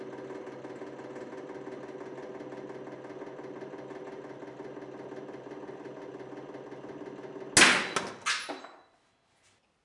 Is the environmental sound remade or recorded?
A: recorded